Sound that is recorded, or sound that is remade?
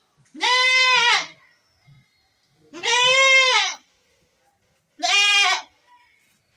recorded